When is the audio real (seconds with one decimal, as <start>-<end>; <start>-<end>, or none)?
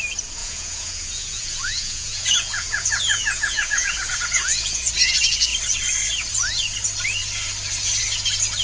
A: 0.0-0.4; 4.9-8.6